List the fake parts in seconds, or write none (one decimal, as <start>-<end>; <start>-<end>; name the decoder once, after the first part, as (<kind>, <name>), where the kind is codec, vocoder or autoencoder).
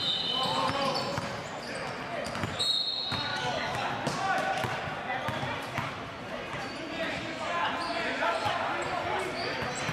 3.3-3.9 (codec, DAC)